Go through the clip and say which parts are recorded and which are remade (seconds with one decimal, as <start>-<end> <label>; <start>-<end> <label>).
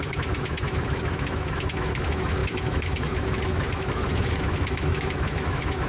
0.0-5.9 remade